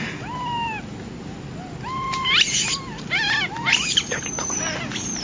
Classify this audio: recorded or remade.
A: recorded